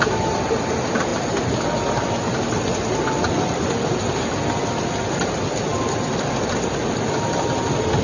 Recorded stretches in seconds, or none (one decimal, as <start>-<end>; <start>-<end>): 0.0-8.0